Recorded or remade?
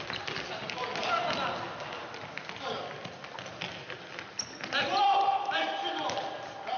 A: recorded